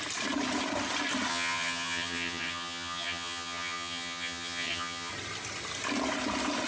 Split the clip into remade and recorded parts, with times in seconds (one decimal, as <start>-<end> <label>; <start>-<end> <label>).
0.0-1.3 recorded; 1.3-5.1 remade; 5.1-6.7 recorded